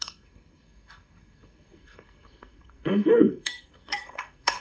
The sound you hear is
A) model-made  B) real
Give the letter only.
A